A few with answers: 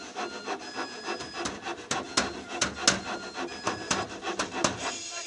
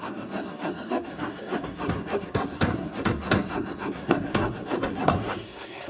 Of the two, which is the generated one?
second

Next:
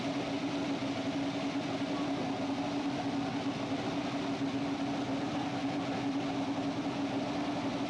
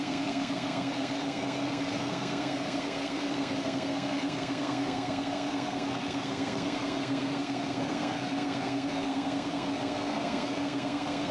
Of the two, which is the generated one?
second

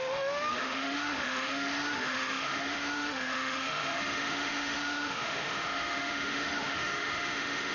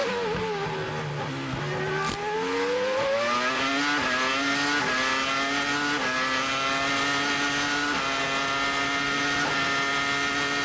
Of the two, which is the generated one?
first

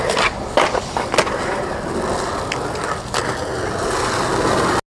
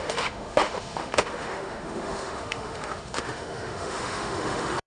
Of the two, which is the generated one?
second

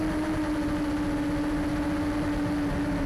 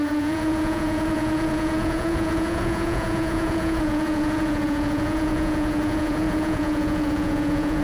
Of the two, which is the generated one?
second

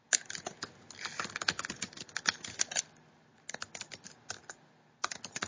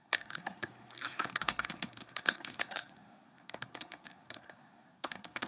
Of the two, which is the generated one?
second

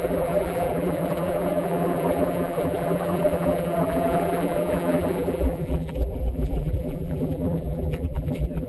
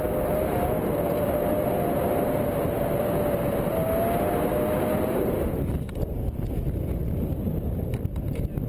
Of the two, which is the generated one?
first